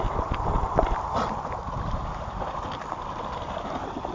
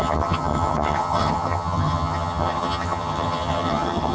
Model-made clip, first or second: second